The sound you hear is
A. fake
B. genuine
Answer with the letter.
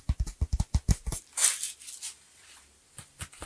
B